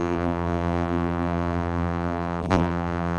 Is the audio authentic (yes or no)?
no